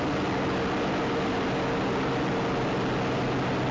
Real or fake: real